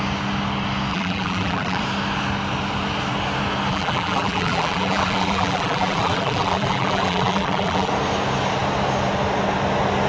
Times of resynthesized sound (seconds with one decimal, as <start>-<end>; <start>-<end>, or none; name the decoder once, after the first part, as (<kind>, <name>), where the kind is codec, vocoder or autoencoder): 0.9-1.8 (vocoder, BigVGAN v2); 3.7-7.9